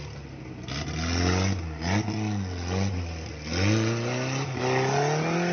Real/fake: real